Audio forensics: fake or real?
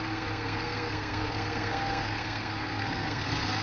fake